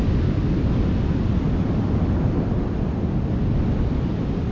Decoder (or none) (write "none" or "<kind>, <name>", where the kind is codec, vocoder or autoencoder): none